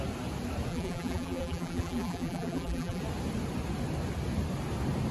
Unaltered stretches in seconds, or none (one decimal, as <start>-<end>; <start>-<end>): 0.0-0.7; 3.0-5.1